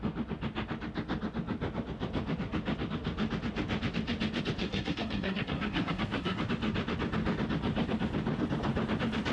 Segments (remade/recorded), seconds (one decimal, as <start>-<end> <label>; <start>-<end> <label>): 0.0-4.6 recorded; 4.6-6.4 remade; 6.4-9.3 recorded